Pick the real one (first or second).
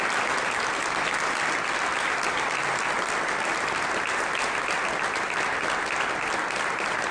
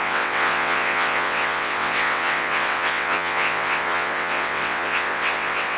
first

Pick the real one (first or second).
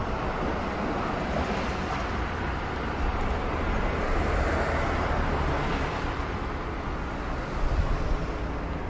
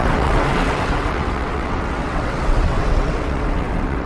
first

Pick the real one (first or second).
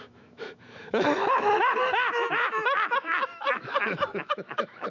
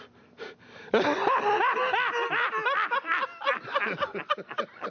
second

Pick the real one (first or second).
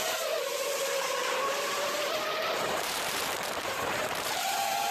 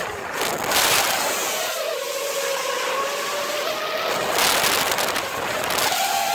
second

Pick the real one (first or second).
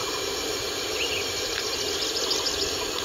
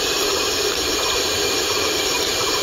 first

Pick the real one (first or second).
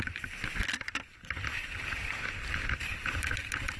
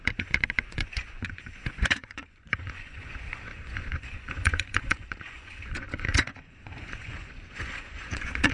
first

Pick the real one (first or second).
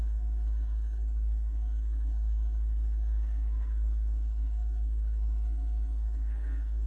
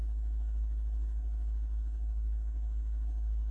second